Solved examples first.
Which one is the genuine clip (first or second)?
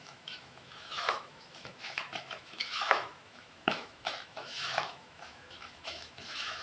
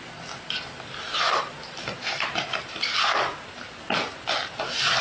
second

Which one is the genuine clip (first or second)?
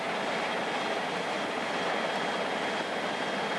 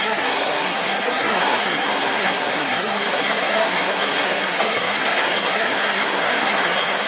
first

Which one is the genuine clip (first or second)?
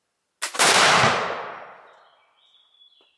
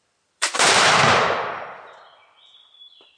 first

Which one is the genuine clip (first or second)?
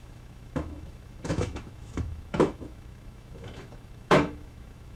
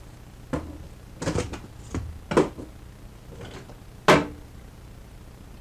second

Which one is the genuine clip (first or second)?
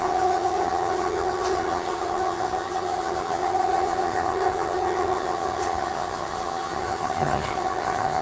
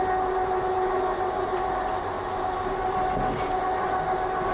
second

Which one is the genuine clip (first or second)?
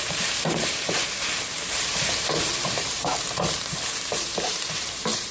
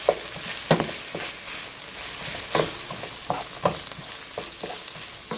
second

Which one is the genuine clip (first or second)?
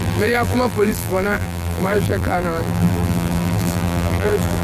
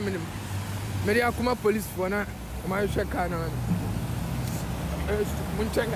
second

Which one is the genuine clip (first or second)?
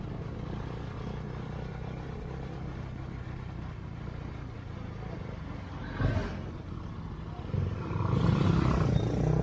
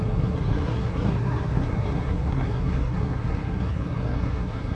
first